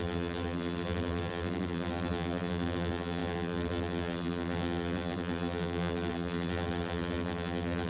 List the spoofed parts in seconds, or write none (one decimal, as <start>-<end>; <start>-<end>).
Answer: 0.0-7.9